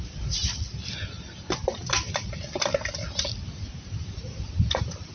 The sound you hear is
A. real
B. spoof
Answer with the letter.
A